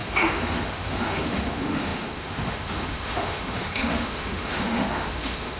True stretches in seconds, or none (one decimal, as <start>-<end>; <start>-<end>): none